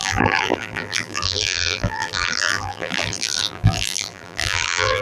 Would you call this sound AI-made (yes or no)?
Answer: yes